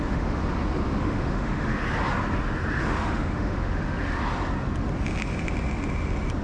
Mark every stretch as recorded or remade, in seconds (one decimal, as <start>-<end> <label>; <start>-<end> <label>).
0.0-0.4 remade; 0.4-1.0 recorded; 1.0-1.8 remade; 1.8-2.8 recorded; 2.8-4.2 remade; 4.2-6.4 recorded